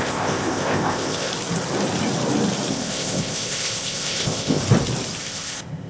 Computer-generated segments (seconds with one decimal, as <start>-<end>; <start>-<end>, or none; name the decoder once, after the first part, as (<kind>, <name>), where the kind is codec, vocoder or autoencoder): 0.0-1.3 (codec, ZipCodec); 2.7-4.6; 5.2-5.9